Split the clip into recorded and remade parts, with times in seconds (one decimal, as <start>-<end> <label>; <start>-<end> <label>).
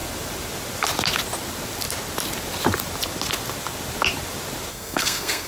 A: 0.0-4.7 recorded; 4.7-5.5 remade